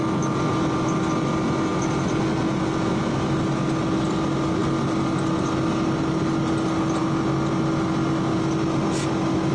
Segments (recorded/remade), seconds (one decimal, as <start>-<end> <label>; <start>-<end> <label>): 0.0-9.5 recorded